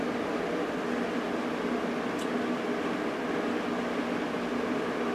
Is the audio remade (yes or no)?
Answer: no